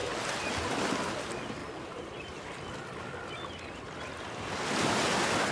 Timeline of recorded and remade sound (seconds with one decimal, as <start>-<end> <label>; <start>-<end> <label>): 0.0-1.6 recorded; 1.6-2.2 remade; 2.2-5.5 recorded